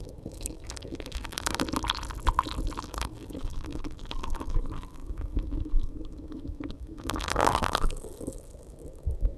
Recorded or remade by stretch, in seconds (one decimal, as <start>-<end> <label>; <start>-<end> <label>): 0.0-1.6 remade; 1.6-2.8 recorded; 2.8-9.4 remade